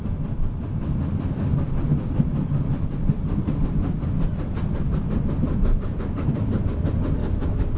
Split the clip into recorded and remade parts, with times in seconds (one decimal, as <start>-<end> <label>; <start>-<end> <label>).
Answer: 0.0-7.2 recorded; 7.2-7.8 remade